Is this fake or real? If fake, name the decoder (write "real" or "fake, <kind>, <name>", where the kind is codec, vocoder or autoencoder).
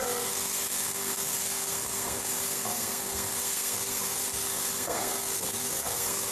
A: fake, codec, SNAC